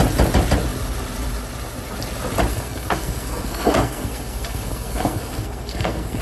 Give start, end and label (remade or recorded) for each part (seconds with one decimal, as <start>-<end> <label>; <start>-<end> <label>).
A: 0.0-2.5 recorded; 2.5-6.2 remade